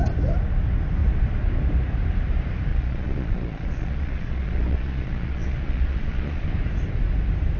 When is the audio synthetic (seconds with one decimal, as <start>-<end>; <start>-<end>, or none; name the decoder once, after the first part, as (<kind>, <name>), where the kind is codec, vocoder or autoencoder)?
2.7-6.5 (vocoder, Vocos)